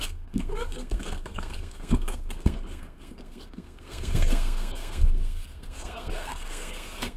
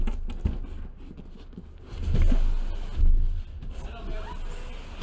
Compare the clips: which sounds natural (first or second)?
second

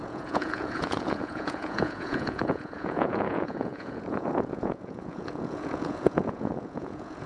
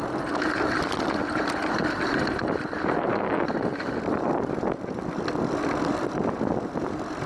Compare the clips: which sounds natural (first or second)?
second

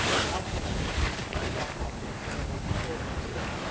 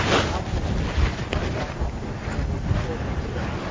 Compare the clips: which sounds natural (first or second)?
second